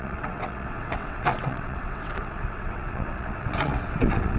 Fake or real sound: fake